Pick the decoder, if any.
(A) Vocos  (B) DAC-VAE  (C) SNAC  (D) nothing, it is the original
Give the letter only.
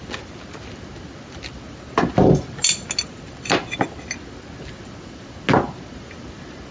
D